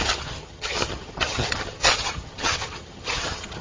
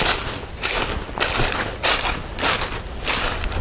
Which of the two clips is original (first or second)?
second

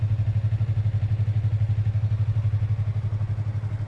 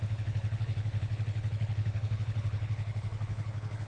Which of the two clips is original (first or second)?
first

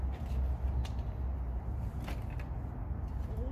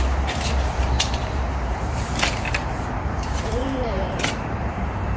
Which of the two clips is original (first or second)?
first